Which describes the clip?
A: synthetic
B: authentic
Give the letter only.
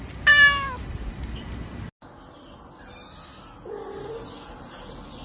B